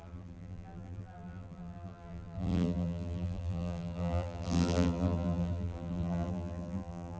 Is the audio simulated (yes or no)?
yes